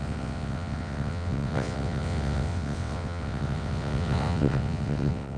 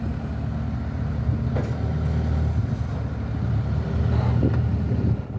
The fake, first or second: first